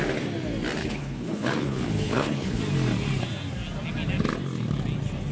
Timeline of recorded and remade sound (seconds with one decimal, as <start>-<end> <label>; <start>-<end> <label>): 0.0-0.8 recorded; 0.8-2.6 remade; 2.6-5.3 recorded